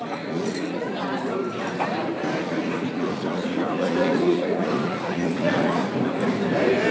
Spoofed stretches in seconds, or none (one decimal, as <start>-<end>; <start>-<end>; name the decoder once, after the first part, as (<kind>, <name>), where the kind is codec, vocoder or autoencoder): 0.0-0.9 (vocoder, Vocos); 2.4-5.8

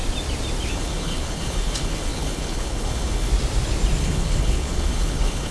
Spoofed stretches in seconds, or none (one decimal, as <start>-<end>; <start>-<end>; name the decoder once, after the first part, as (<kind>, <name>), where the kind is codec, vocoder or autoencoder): 0.7-3.3 (codec, HILCodec); 4.0-5.5